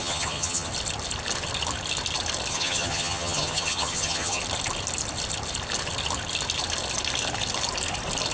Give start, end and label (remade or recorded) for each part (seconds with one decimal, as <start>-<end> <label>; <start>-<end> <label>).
0.0-0.7 remade; 0.7-2.5 recorded; 2.5-4.4 remade; 4.4-8.3 recorded